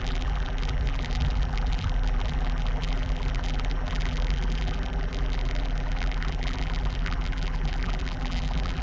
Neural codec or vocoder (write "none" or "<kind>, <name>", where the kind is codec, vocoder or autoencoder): vocoder, BigVGAN v2